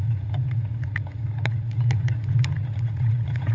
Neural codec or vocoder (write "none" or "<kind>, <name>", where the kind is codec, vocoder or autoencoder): vocoder, Vocos